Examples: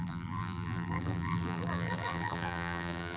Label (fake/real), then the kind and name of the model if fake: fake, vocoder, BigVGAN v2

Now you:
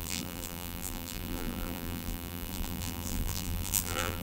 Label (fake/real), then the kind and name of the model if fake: fake, vocoder, BigVGAN v2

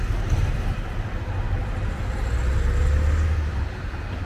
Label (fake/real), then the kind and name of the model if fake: real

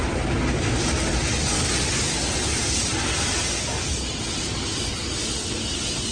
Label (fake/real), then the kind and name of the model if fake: real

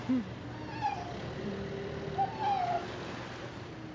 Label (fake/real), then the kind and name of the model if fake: real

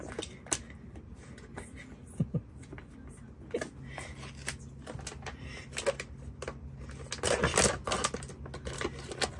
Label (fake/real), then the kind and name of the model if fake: real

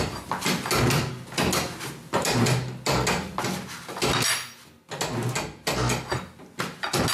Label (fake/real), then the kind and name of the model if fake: real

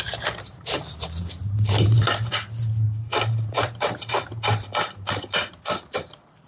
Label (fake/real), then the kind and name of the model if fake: fake, vocoder, BigVGAN v2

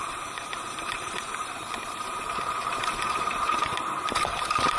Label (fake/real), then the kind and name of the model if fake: fake, vocoder, BigVGAN v2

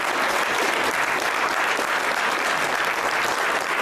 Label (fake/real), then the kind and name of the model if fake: fake, vocoder, BigVGAN v2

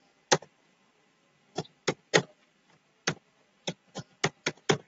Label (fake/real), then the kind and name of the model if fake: real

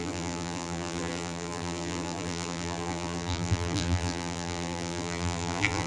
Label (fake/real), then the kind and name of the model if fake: fake, vocoder, BigVGAN v2